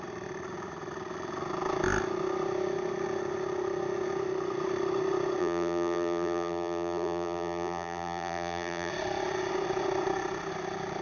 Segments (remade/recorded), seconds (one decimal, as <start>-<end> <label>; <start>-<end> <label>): 0.0-5.4 recorded; 5.4-8.9 remade; 8.9-11.0 recorded

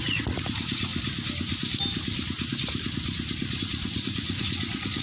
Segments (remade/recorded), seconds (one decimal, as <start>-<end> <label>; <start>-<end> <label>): 0.0-0.9 remade; 0.9-3.6 recorded; 3.6-5.0 remade

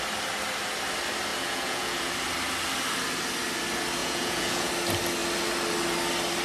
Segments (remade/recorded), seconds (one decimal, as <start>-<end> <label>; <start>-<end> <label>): 0.0-1.3 recorded; 1.3-2.1 remade; 2.1-4.0 recorded; 4.0-4.7 remade; 4.7-6.4 recorded

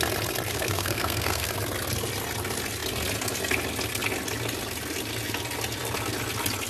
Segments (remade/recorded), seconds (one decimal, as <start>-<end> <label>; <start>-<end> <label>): 0.0-0.5 recorded; 0.5-1.5 remade; 1.5-6.7 recorded

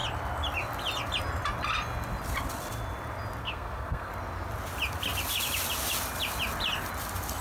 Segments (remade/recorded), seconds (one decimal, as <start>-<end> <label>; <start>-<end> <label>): 0.0-3.4 recorded; 3.4-4.1 remade; 4.1-7.4 recorded